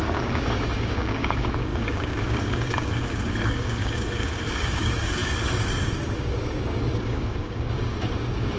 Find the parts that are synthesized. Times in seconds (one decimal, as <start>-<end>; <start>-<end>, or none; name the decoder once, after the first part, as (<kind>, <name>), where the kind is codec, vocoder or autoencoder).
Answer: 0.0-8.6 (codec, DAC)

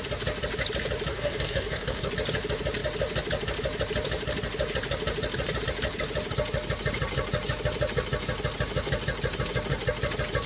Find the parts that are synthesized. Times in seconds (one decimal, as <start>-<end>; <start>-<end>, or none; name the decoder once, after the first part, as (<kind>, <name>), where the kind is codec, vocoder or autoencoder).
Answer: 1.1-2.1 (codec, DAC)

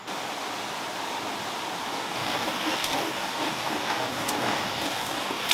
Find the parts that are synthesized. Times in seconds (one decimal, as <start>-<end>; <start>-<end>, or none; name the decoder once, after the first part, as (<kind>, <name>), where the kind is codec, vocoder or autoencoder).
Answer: 1.9-5.5 (codec, DAC)

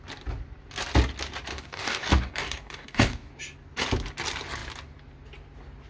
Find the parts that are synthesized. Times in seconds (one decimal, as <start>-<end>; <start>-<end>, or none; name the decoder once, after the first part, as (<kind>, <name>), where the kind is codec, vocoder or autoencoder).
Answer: 1.5-3.3 (codec, DAC)

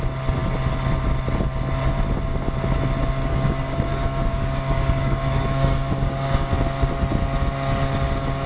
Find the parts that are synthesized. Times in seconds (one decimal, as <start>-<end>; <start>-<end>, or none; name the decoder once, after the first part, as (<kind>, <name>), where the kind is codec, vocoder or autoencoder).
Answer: 3.3-6.5 (codec, DAC)

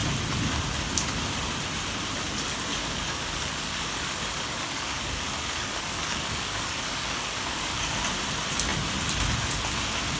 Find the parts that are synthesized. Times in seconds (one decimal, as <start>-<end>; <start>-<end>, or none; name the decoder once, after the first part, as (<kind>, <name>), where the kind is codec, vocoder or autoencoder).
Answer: 2.7-7.9 (codec, DAC)

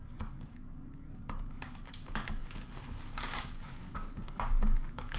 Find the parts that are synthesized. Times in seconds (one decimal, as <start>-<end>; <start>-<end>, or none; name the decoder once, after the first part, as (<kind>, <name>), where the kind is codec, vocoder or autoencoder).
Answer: 0.0-5.2 (codec, DAC)